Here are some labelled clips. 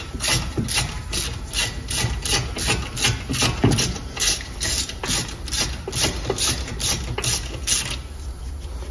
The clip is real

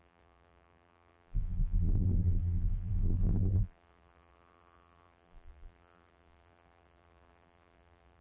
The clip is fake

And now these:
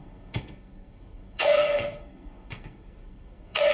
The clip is fake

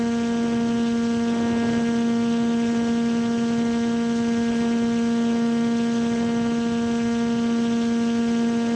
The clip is real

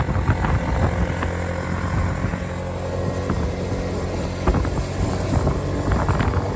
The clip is real